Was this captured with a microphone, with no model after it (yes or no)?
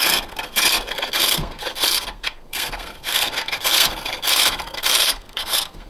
no